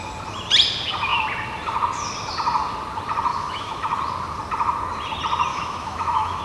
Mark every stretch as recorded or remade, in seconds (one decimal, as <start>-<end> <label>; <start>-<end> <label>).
0.0-3.3 recorded; 3.3-4.0 remade; 4.0-5.5 recorded; 5.5-6.4 remade